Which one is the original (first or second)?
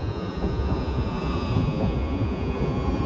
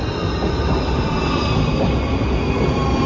second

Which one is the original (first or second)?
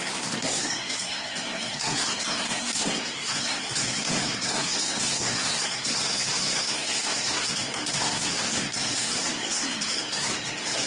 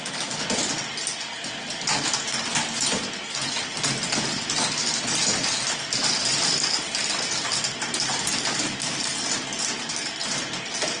second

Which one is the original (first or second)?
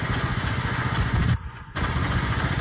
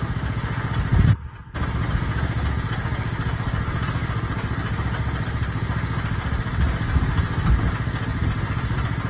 second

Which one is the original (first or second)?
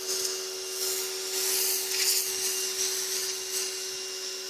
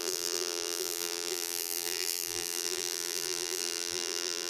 first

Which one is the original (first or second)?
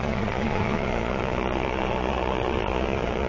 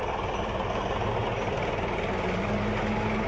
second